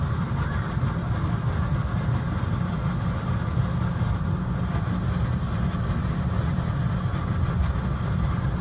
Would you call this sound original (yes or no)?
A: yes